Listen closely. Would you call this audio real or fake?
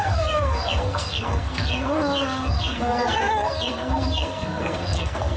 fake